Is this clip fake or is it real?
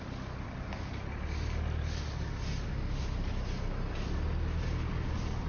real